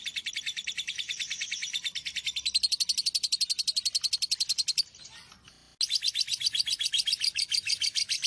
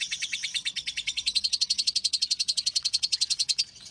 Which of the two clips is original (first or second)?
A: first